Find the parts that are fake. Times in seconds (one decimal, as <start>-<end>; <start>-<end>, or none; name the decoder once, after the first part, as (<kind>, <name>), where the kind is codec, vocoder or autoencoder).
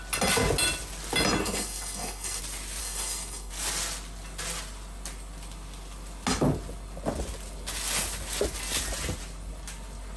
1.4-2.4 (codec, SNAC); 2.8-3.5